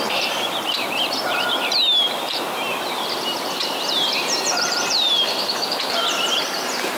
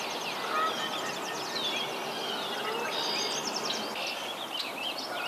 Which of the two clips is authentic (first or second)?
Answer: second